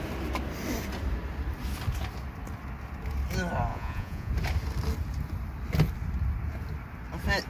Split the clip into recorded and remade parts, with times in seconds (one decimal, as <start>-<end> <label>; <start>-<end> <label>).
0.0-3.7 recorded; 3.7-4.3 remade; 4.3-7.5 recorded